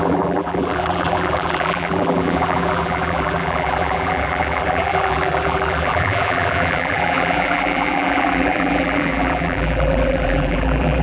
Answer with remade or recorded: remade